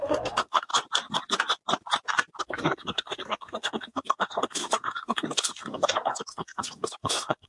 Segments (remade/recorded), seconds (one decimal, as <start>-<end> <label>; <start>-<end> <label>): 0.0-0.7 remade; 0.7-2.4 recorded; 2.4-7.5 remade